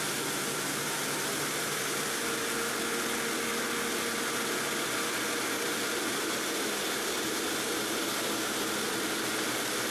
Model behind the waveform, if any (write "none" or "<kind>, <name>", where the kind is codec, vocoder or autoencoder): none